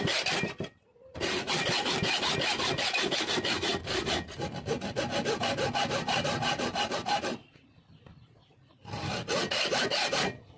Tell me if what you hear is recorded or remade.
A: recorded